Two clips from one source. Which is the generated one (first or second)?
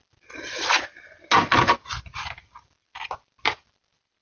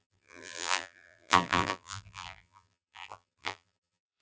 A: second